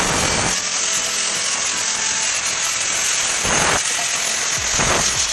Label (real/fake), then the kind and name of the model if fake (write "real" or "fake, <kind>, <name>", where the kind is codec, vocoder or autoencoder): real